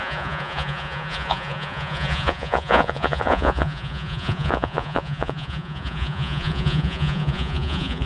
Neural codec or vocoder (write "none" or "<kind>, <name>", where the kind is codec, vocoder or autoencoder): vocoder, Vocos